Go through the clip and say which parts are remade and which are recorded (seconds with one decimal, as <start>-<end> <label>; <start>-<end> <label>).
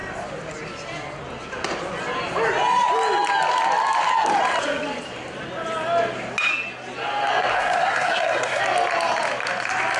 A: 0.0-7.5 recorded; 7.5-8.6 remade; 8.6-10.0 recorded